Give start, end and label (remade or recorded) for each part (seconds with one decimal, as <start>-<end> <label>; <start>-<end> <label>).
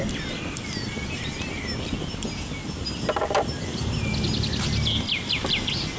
0.0-6.0 recorded